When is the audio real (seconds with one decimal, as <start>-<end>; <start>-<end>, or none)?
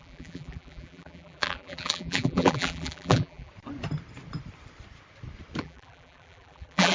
3.5-5.6